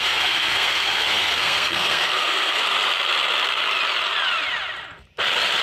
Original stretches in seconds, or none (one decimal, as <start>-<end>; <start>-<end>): 2.6-5.6